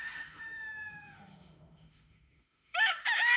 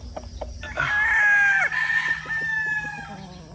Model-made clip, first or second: first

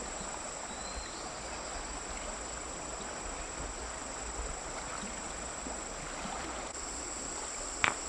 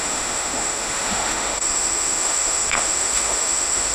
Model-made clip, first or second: second